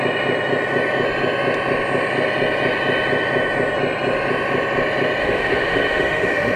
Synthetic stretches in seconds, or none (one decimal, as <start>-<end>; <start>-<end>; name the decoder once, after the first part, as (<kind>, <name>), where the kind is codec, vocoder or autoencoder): 5.2-6.6 (autoencoder, DAC-VAE)